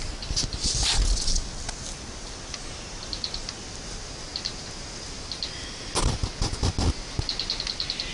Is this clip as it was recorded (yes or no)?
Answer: yes